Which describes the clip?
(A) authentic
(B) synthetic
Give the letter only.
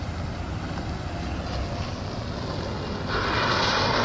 A